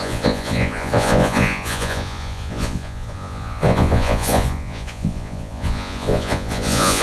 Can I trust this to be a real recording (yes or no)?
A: no